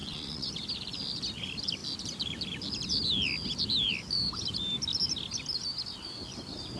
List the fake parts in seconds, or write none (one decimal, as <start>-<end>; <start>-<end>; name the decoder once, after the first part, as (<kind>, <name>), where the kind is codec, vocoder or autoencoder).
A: 0.0-0.5 (vocoder, WaveNeXt)